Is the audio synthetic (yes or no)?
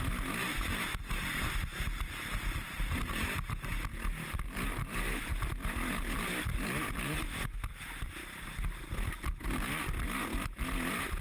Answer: no